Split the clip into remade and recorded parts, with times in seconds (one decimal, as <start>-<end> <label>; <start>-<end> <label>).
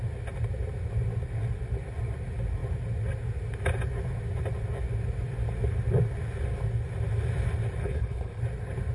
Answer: 0.0-7.8 recorded; 7.8-8.4 remade; 8.4-8.9 recorded